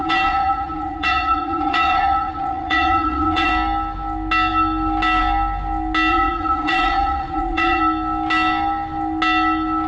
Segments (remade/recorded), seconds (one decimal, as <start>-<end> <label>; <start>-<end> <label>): 0.0-3.5 remade; 3.5-6.1 recorded; 6.1-7.8 remade; 7.8-9.9 recorded